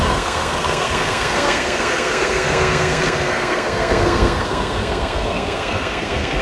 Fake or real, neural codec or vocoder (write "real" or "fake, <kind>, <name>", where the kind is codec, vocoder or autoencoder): fake, codec, SNAC